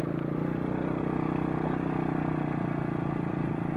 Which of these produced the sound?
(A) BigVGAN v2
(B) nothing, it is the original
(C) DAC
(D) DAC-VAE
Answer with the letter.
B